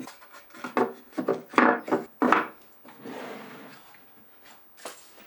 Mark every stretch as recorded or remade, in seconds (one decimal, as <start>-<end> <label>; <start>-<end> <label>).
0.0-1.3 recorded; 1.3-1.8 remade; 1.8-5.3 recorded